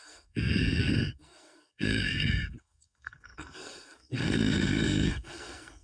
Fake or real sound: fake